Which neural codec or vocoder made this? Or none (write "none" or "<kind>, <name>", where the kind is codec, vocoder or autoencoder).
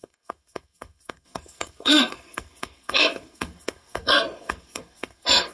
codec, SNAC